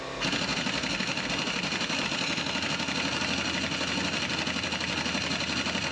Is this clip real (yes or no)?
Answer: yes